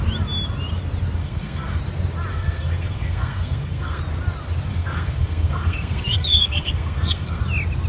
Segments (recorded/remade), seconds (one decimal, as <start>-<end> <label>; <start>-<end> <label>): 0.0-1.2 recorded; 1.2-1.8 remade; 1.8-2.3 recorded; 2.3-4.0 remade; 4.0-4.7 recorded; 4.7-7.4 remade; 7.4-7.9 recorded